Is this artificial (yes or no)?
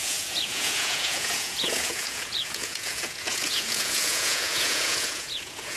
yes